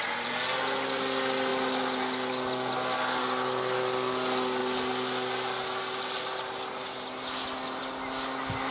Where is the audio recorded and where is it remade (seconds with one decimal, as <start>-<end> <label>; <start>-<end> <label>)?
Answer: 0.0-8.7 recorded